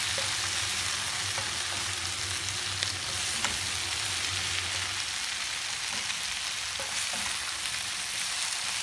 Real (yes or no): yes